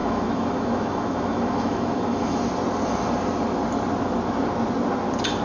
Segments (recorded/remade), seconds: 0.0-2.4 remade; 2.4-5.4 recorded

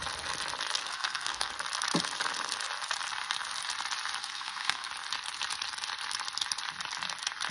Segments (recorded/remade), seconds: 0.0-0.8 recorded; 0.8-1.5 remade; 1.5-4.2 recorded; 4.2-4.9 remade; 4.9-7.5 recorded